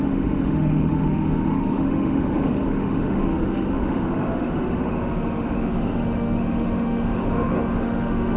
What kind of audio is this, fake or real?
fake